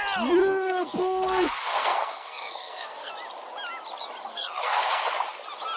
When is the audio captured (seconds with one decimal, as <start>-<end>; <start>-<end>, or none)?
0.0-0.4; 3.1-4.3; 5.1-5.8